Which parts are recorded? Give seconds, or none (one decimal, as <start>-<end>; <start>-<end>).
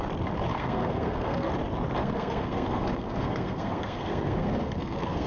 0.0-0.5; 1.5-2.0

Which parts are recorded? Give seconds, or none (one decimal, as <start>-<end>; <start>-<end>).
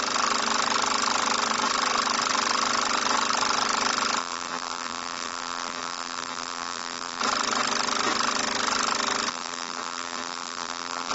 0.0-4.2; 7.2-9.3